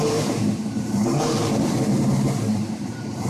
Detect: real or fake fake